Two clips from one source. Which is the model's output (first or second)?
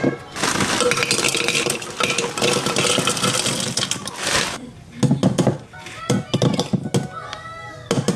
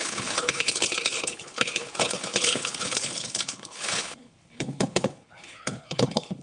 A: second